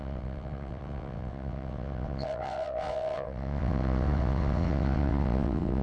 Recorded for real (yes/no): no